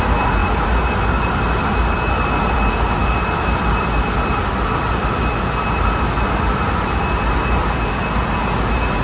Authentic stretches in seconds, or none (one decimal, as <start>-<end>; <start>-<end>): 0.0-9.0